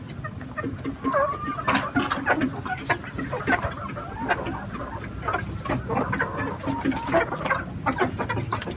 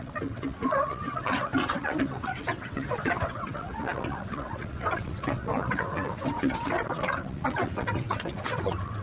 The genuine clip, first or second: first